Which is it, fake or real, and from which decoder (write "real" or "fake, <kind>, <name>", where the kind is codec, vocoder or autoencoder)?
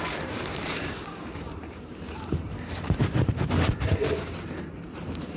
fake, vocoder, BigVGAN v2